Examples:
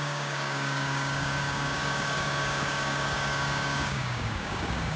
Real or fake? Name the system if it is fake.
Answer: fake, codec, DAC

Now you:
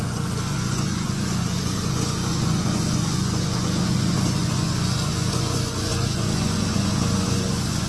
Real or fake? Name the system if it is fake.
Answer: fake, vocoder, Vocos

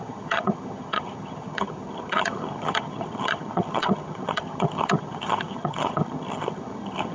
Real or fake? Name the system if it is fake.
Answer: fake, vocoder, HiFi-GAN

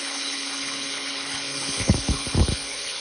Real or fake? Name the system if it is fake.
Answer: fake, codec, HILCodec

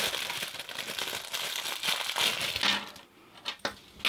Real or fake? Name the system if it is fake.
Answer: real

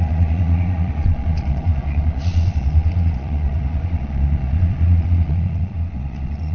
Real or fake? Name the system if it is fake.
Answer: fake, vocoder, Vocos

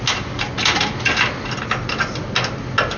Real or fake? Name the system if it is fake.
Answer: real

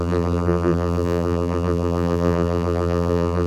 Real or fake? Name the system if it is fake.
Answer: fake, vocoder, BigVGAN v2